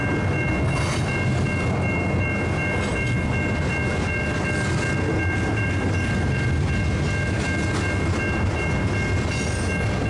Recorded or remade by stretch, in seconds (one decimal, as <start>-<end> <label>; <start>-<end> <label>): 0.0-10.1 recorded